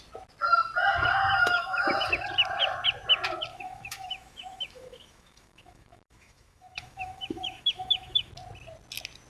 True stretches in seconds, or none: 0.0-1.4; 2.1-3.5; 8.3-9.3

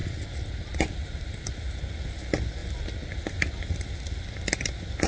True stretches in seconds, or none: 0.0-5.1